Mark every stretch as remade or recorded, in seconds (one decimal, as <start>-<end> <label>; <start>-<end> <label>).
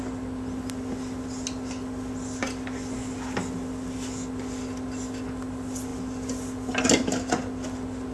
0.0-8.1 recorded